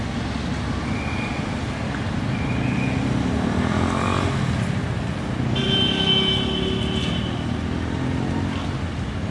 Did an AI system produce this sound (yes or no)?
no